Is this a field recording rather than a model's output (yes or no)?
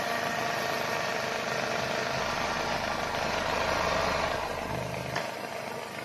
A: yes